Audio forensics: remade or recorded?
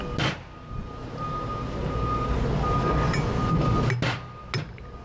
recorded